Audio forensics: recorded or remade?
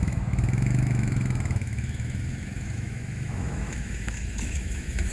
remade